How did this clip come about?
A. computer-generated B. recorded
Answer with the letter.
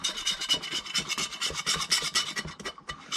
B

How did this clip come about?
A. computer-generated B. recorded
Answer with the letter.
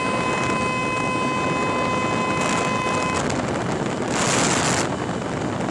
B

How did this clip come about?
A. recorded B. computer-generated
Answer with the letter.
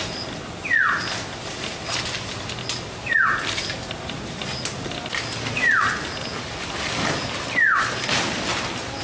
A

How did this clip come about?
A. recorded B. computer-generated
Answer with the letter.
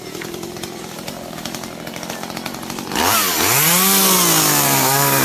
A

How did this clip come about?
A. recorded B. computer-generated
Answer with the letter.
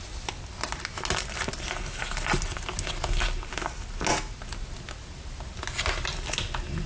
A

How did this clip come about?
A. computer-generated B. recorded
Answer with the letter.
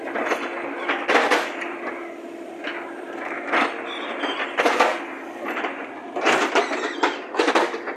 A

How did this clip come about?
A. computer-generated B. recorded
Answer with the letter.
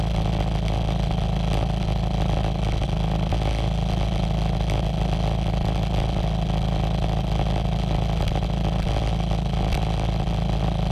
B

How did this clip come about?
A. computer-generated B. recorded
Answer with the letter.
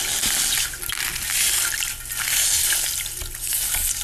B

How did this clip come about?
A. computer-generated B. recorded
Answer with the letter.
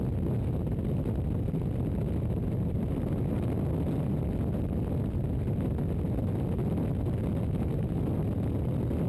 B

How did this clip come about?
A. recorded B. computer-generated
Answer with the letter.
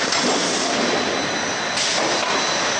A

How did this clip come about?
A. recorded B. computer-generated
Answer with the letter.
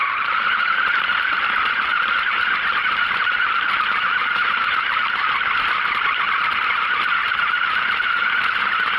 B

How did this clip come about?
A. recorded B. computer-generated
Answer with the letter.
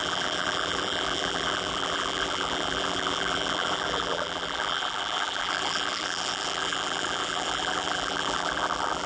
B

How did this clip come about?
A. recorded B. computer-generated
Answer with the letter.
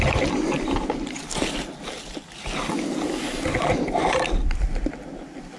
A